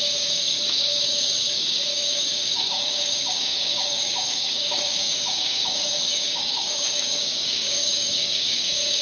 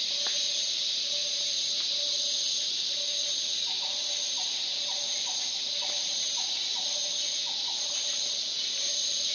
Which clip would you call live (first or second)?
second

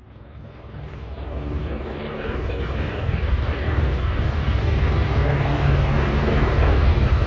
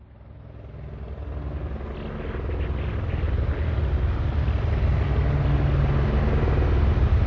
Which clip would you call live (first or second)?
second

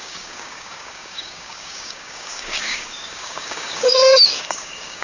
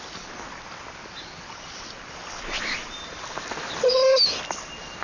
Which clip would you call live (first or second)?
second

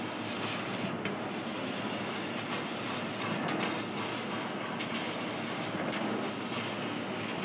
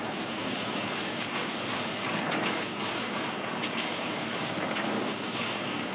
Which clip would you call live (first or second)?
first